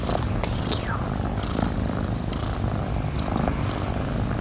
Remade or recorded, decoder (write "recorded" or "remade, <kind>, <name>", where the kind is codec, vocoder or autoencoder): recorded